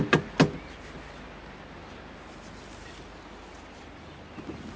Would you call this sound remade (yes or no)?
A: no